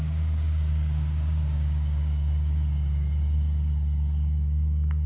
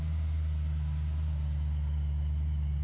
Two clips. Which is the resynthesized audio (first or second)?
first